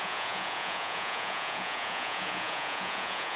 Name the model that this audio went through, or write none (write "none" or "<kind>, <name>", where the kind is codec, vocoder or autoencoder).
vocoder, Vocos